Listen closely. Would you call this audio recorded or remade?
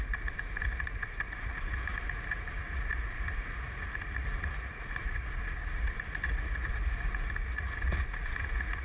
remade